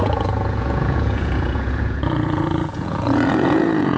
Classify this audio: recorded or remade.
remade